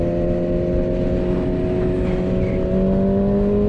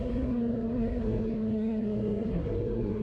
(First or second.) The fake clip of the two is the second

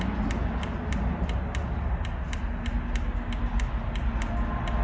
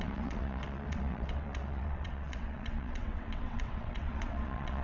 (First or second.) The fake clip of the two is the second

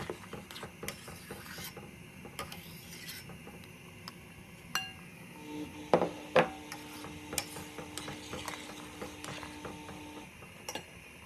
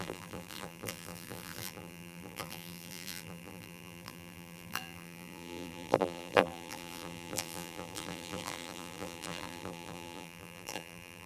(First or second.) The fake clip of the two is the second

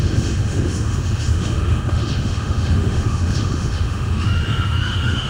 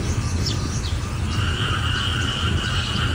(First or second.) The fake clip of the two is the first